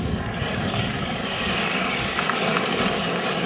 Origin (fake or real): fake